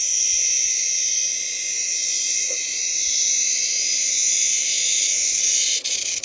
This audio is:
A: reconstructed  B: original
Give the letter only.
A